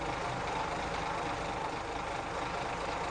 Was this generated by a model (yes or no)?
no